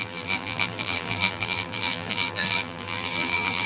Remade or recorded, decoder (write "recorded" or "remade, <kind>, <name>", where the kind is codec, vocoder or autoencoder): remade, vocoder, BigVGAN v2